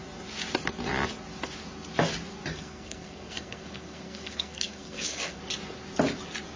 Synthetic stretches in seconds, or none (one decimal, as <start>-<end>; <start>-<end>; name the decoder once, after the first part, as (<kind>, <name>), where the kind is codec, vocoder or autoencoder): 2.5-5.4 (codec, SNAC)